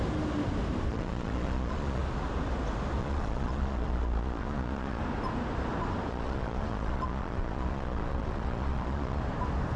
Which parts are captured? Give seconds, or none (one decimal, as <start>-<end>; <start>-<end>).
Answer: 0.0-0.9; 2.0-3.0; 5.0-6.1; 9.2-9.8